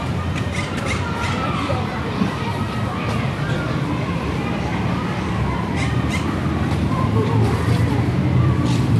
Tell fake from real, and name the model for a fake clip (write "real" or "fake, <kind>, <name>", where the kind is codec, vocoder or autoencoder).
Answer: fake, vocoder, BigVGAN v2